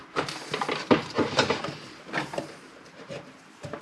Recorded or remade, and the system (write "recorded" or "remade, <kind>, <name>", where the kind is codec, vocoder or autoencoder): remade, vocoder, BigVGAN v2